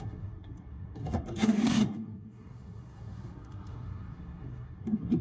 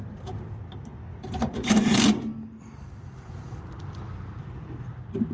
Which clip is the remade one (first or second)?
first